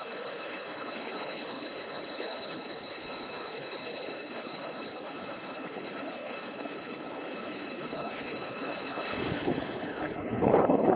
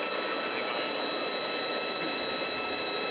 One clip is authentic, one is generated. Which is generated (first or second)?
first